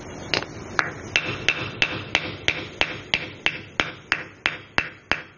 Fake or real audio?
real